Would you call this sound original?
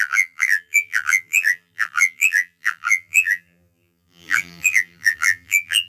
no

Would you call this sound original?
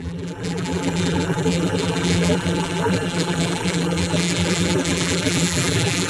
no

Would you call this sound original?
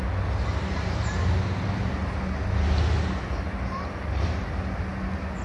yes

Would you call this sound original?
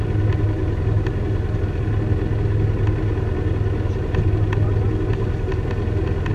yes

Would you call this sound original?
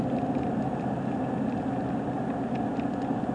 yes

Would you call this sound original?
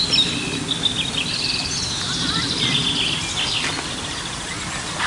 yes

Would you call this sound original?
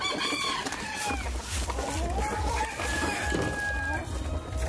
yes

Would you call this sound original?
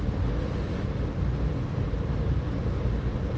yes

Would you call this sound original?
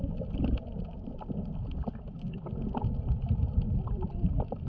yes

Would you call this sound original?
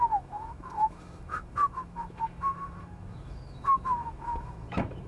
no